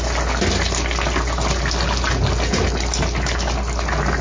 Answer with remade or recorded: recorded